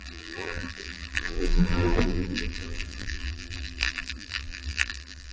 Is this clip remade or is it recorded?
remade